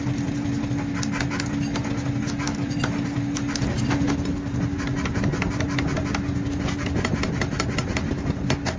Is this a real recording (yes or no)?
yes